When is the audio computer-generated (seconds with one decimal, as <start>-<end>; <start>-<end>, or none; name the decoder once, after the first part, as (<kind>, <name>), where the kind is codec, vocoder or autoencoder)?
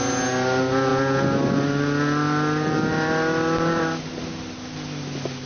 none